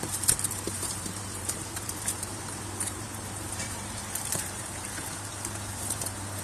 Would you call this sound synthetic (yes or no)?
yes